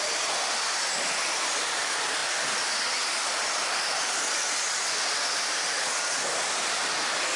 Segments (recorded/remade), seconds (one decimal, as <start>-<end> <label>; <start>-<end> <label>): 0.0-7.4 recorded